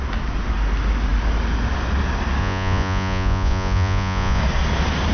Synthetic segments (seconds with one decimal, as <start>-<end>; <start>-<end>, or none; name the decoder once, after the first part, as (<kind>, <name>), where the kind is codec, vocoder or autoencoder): 2.4-4.4 (vocoder, Vocos)